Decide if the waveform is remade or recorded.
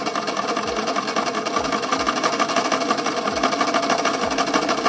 recorded